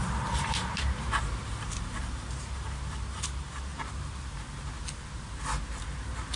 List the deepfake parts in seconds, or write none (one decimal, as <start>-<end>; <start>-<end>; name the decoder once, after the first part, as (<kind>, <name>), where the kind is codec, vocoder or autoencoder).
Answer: 0.0-3.7 (vocoder, BigVGAN v2); 5.8-6.4